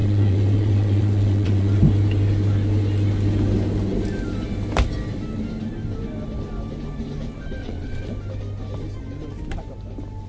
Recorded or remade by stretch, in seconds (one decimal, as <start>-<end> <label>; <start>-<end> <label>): 0.0-1.8 remade; 1.8-7.6 recorded; 7.6-8.1 remade; 8.1-10.3 recorded